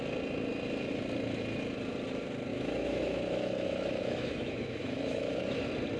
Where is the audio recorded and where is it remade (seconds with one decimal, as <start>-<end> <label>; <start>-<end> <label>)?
0.0-2.5 recorded; 2.5-5.4 remade; 5.4-6.0 recorded